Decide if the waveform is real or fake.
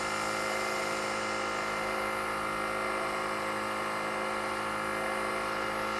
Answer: real